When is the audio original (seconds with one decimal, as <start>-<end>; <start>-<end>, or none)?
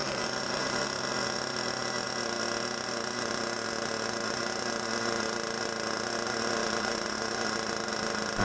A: 1.0-6.6; 7.2-8.4